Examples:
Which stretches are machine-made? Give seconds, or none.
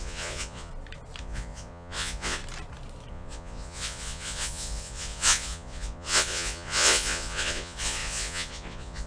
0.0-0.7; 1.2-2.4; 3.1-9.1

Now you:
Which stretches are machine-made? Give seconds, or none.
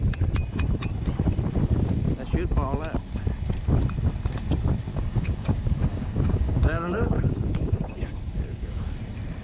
4.9-8.9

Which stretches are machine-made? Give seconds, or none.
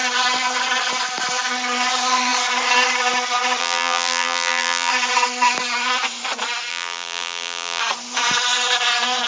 3.6-4.9; 6.7-7.8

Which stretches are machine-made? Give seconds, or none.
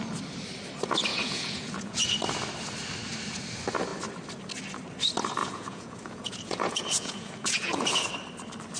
1.1-2.1; 5.4-8.1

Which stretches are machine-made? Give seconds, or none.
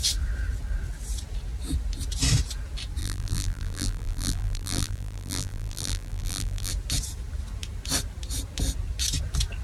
3.0-6.7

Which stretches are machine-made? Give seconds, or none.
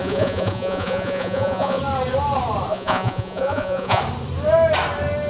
0.0-1.8; 2.7-4.0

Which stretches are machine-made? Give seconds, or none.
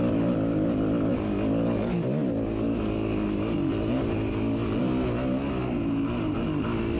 none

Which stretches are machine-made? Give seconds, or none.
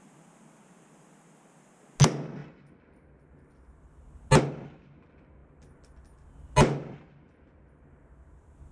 none